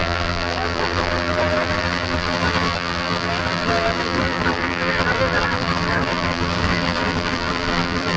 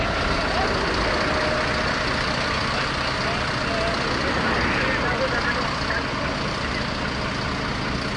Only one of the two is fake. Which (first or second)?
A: first